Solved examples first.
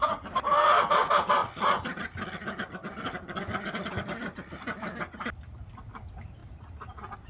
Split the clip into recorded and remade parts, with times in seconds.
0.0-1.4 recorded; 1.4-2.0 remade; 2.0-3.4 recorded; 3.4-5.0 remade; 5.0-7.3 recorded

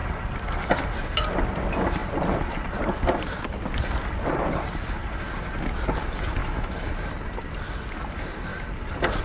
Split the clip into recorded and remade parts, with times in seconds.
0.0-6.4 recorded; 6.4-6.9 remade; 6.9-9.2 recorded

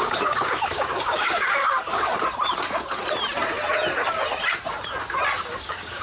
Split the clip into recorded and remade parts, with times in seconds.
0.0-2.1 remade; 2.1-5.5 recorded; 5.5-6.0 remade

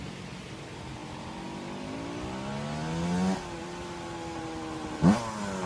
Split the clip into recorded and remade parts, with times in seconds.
0.0-5.7 recorded

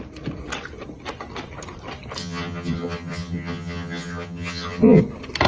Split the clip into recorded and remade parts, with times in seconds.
0.0-2.2 recorded; 2.2-5.0 remade; 5.0-5.5 recorded

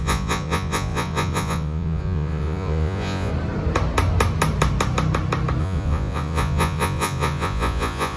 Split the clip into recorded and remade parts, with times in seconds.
0.0-3.3 remade; 3.3-5.6 recorded; 5.6-8.2 remade